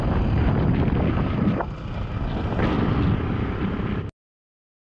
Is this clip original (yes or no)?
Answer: yes